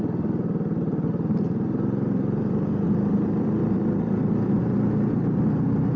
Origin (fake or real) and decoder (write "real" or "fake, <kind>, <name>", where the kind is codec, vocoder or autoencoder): real